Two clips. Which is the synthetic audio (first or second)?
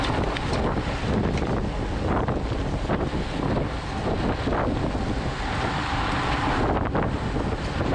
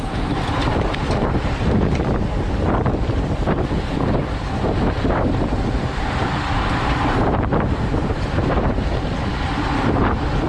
second